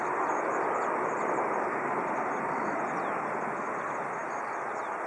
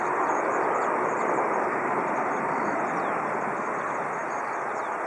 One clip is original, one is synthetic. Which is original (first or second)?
first